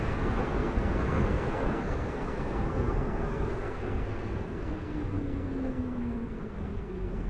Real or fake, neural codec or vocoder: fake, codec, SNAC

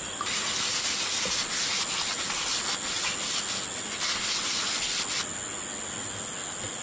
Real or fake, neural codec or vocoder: real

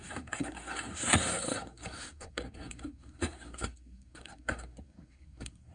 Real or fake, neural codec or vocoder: fake, codec, SNAC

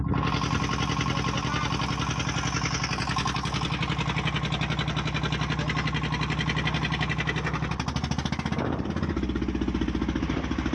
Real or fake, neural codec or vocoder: real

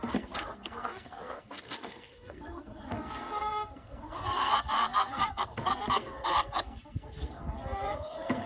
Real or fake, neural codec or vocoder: fake, codec, SNAC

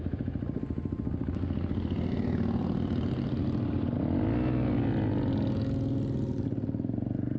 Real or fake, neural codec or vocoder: real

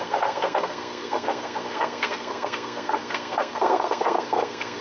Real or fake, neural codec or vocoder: fake, codec, SNAC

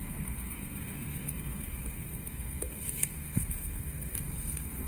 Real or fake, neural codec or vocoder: fake, codec, SNAC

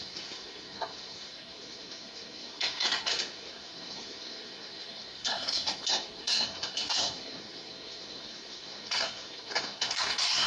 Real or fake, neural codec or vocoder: fake, codec, SNAC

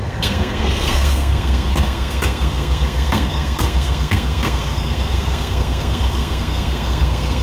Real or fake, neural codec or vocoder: fake, codec, SNAC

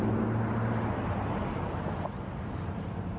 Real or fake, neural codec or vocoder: real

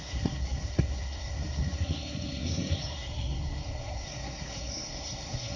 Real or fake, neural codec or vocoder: fake, codec, SNAC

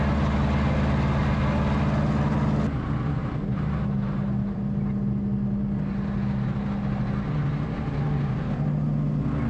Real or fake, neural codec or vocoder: real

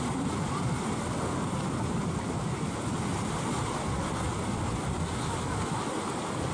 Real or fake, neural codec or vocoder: real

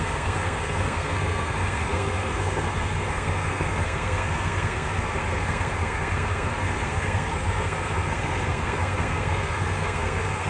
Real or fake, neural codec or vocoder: fake, codec, SNAC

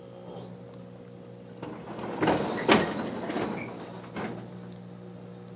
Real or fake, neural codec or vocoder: real